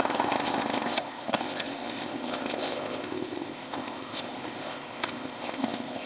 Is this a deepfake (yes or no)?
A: yes